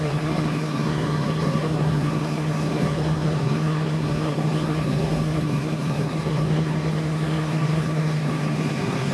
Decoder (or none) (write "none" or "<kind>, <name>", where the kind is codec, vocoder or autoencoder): codec, SNAC